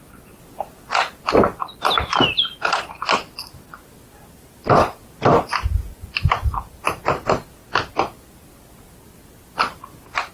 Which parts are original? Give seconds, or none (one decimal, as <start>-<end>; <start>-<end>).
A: 0.0-10.3